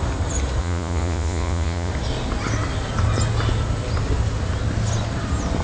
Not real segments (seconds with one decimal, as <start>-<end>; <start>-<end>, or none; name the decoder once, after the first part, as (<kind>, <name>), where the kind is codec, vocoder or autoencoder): 0.6-1.9 (vocoder, Vocos)